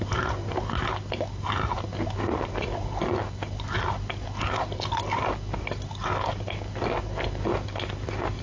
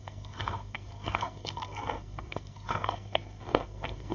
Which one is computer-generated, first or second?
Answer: second